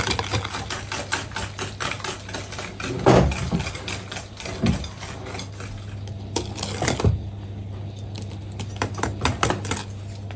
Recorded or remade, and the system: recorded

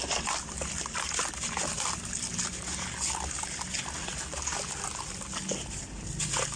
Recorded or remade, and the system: recorded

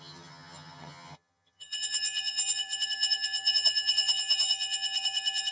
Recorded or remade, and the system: remade, vocoder, HiFi-GAN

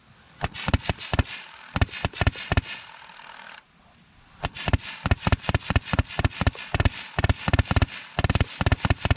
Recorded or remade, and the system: recorded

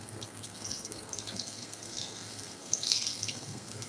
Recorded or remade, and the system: remade, codec, SNAC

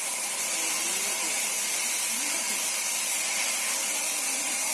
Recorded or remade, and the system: recorded